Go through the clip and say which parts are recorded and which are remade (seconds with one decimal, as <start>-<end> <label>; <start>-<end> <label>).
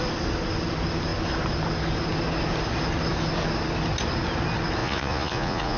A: 0.0-4.8 recorded; 4.8-5.8 remade